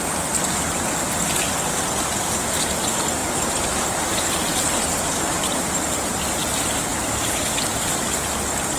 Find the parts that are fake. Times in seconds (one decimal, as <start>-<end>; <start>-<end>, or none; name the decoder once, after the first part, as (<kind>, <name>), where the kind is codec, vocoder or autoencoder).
3.2-6.4 (vocoder, BigVGAN v2); 6.9-8.0